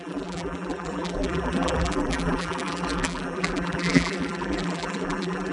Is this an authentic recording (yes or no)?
no